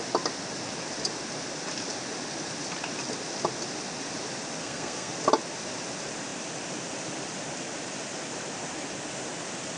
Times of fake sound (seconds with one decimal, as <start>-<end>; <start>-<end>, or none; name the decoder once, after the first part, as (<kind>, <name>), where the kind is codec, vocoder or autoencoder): 4.6-5.1 (codec, SNAC)